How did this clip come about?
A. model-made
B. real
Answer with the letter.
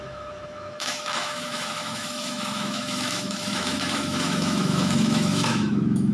A